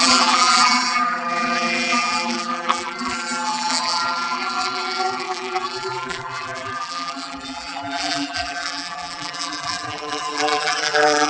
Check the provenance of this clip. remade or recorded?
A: remade